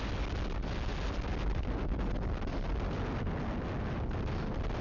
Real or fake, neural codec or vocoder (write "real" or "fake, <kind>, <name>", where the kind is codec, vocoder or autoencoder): real